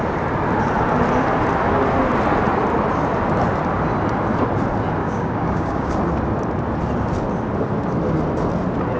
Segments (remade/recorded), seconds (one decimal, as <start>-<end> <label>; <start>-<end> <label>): 0.0-5.0 recorded; 5.0-5.9 remade; 5.9-9.0 recorded